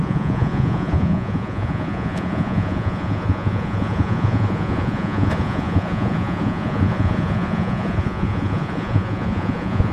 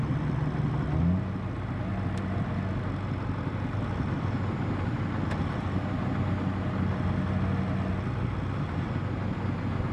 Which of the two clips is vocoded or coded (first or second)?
first